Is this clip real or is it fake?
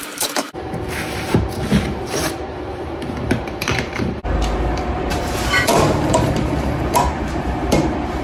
fake